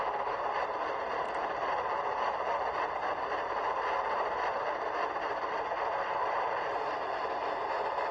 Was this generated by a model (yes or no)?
yes